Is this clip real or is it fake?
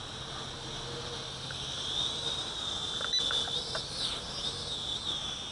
real